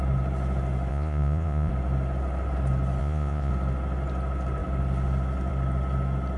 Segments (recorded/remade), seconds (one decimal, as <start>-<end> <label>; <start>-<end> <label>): 0.0-0.9 recorded; 0.9-1.7 remade; 1.7-3.0 recorded; 3.0-3.5 remade; 3.5-6.4 recorded